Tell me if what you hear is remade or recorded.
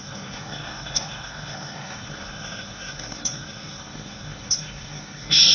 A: remade